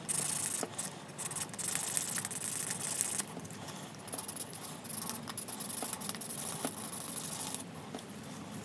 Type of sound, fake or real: real